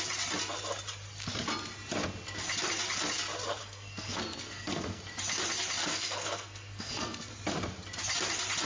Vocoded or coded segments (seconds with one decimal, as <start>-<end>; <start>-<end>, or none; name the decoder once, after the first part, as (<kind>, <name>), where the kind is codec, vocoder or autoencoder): 3.6-5.0 (codec, SNAC); 5.8-7.3